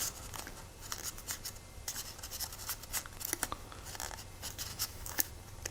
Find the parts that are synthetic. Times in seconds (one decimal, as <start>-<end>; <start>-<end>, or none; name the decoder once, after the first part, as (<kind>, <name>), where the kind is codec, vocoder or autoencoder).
4.7-5.3 (autoencoder, DAC-VAE)